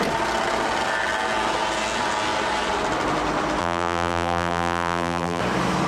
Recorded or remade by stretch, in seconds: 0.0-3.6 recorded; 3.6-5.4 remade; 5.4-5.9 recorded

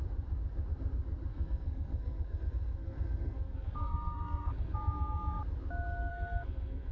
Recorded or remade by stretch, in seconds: 0.0-1.3 recorded; 1.3-5.4 remade; 5.4-6.1 recorded; 6.1-6.9 remade

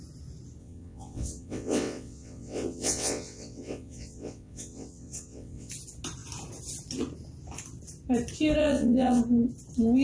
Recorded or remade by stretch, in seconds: 0.0-0.6 recorded; 0.6-5.7 remade; 5.7-8.6 recorded; 8.6-9.2 remade; 9.2-10.0 recorded

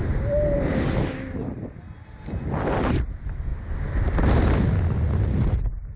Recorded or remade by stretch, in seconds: 0.0-6.0 recorded

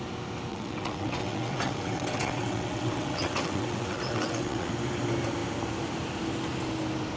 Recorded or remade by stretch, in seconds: 0.0-0.5 recorded; 0.5-4.7 remade; 4.7-7.2 recorded

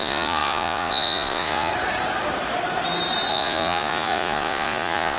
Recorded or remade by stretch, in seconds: 0.0-1.7 remade; 1.7-3.3 recorded; 3.3-5.2 remade

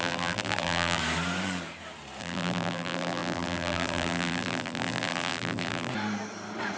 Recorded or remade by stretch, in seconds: 0.0-1.0 remade; 1.0-2.2 recorded; 2.2-5.9 remade; 5.9-6.8 recorded